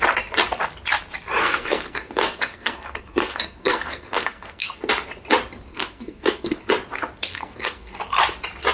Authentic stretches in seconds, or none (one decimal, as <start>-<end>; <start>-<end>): 0.0-1.4; 4.9-5.7; 6.6-7.3; 8.0-8.7